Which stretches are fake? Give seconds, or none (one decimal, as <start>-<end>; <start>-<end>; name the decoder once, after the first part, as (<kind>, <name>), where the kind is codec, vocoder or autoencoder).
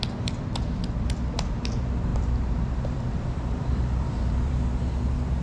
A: 2.1-4.6 (vocoder, BigVGAN v2)